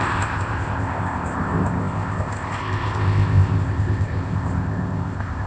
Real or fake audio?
fake